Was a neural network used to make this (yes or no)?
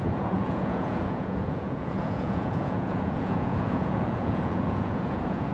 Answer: yes